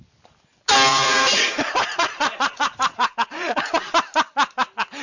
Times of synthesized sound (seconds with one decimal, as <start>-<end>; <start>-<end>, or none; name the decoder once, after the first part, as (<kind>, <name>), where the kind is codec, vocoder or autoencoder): 0.9-3.9 (vocoder, Vocos)